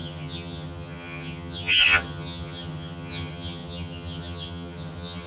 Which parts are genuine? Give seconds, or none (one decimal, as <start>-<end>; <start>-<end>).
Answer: none